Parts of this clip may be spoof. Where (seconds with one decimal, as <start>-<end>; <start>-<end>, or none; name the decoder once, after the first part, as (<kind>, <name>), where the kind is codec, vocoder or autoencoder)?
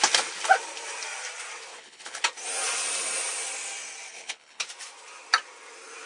1.7-2.2 (codec, HILCodec); 4.1-4.6